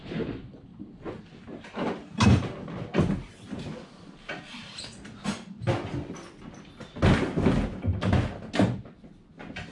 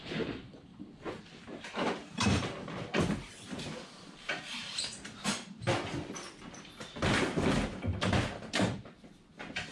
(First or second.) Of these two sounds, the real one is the first